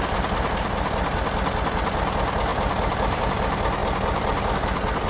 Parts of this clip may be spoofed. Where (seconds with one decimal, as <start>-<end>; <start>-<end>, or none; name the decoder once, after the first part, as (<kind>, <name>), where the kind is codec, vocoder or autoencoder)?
2.5-3.2 (vocoder, BigVGAN v2); 3.8-4.5